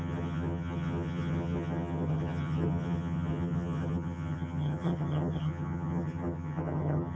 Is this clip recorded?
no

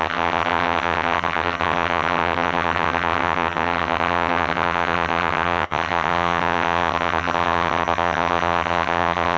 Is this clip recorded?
no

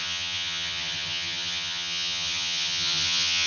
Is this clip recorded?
no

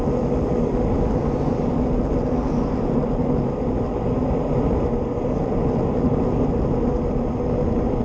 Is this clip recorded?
yes